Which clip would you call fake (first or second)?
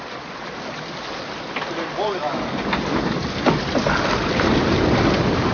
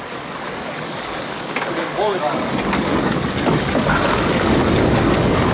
second